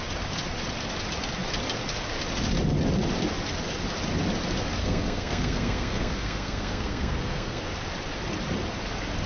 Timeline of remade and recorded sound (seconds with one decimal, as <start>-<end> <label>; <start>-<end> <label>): 0.0-4.8 recorded; 4.8-7.6 remade; 7.6-9.3 recorded